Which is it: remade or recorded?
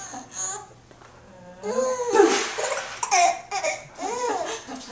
recorded